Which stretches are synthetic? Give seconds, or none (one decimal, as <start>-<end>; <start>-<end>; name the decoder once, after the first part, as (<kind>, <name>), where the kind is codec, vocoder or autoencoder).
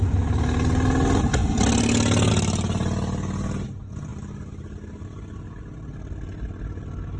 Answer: none